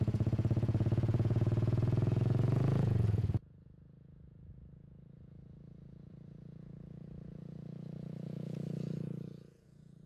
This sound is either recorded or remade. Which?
remade